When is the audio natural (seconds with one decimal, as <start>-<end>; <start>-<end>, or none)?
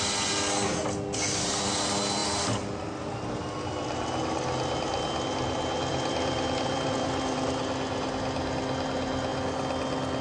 0.0-5.9; 7.6-10.2